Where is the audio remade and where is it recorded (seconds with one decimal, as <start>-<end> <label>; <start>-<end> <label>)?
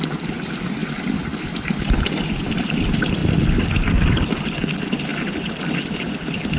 0.0-6.6 recorded